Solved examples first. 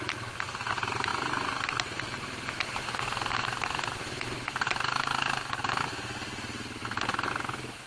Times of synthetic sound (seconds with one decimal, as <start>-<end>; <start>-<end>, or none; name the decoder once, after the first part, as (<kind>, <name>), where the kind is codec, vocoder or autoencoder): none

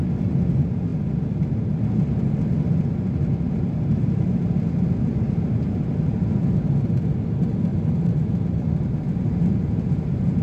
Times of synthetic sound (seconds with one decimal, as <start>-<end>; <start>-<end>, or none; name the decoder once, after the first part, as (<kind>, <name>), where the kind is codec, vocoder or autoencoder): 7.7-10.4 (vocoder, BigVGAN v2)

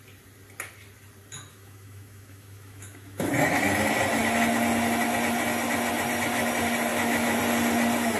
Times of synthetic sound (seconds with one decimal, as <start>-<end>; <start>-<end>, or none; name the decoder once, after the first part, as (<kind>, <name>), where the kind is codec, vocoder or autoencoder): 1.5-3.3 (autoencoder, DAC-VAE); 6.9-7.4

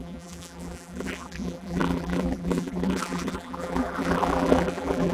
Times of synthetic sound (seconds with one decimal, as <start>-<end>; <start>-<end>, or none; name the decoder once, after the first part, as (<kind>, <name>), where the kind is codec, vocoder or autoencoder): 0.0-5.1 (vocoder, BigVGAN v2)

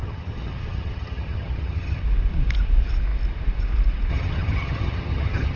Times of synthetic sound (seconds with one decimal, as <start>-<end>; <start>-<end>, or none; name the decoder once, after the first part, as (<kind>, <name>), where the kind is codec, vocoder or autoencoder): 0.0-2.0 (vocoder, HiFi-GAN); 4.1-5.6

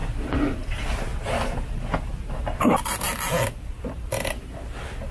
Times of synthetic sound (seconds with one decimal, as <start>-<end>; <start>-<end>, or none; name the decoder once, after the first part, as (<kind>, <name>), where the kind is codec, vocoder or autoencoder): 0.5-1.1 (vocoder, BigVGAN v2); 3.9-5.1

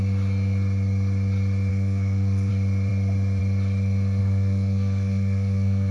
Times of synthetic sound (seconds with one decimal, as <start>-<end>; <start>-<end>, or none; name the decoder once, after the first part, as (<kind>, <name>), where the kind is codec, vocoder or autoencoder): 1.7-2.5 (codec, SNAC); 4.2-5.9